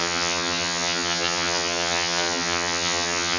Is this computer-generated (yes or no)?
yes